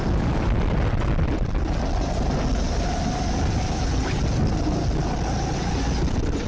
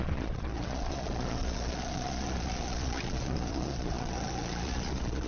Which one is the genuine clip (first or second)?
first